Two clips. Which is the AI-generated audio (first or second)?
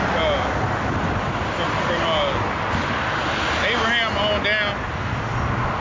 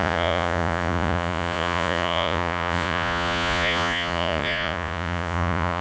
second